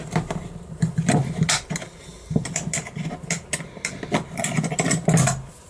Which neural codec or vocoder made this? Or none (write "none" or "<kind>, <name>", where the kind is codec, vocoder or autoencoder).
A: none